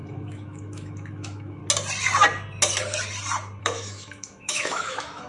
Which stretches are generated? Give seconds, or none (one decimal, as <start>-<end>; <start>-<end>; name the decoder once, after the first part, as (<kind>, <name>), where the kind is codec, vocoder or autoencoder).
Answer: 0.0-1.6 (autoencoder, DAC-VAE); 3.6-5.3